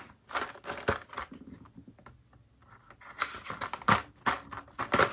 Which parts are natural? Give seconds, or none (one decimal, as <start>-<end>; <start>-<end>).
0.0-5.1